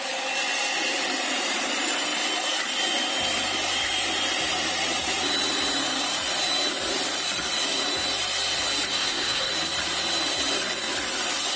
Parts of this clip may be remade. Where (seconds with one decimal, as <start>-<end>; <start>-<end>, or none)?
8.9-9.5